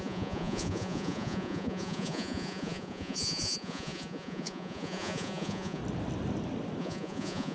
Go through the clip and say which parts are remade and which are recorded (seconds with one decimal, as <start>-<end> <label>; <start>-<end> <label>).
0.0-5.8 remade; 5.8-6.8 recorded; 6.8-7.5 remade

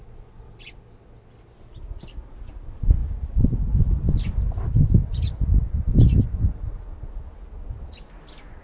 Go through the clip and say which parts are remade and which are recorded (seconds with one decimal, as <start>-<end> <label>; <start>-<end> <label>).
0.0-8.6 recorded

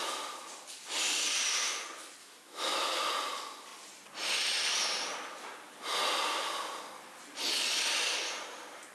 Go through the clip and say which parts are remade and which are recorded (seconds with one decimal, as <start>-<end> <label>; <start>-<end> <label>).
0.0-2.2 recorded; 2.2-3.0 remade; 3.0-8.9 recorded